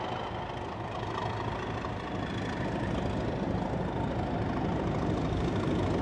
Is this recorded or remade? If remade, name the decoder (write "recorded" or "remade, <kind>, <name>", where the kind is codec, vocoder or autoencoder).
recorded